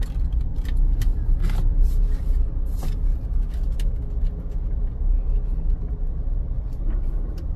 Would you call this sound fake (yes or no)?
no